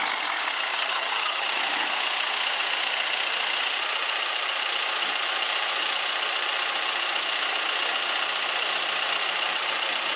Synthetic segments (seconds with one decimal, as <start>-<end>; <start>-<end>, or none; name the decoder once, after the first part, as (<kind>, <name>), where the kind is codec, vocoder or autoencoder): 0.7-1.6 (vocoder, HiFi-GAN)